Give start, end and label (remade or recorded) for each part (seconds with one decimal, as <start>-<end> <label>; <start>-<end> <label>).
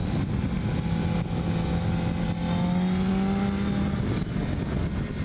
0.0-5.2 recorded